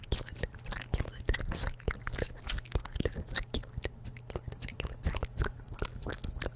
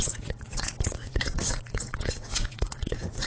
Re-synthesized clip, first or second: second